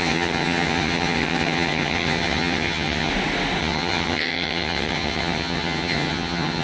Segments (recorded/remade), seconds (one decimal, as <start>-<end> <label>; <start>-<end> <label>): 0.0-3.1 remade; 3.1-3.6 recorded; 3.6-6.6 remade